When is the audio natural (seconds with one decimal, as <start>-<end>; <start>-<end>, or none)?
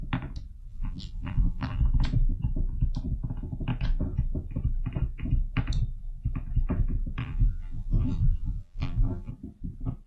0.0-0.7; 1.8-7.2; 9.3-10.1